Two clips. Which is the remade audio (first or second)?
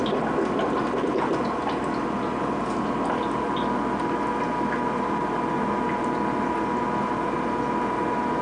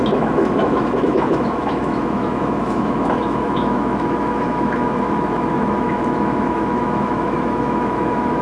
second